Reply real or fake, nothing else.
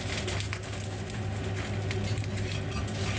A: real